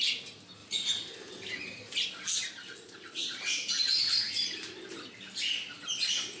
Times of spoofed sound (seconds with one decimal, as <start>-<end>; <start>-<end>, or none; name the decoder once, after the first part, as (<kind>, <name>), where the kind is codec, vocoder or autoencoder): 0.6-2.0 (vocoder, BigVGAN v2)